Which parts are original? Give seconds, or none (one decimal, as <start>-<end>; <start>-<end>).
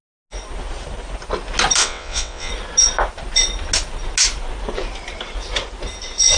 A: 0.0-1.8; 2.5-6.4